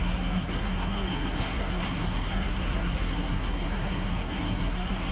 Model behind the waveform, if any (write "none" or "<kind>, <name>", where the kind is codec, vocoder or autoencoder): codec, SNAC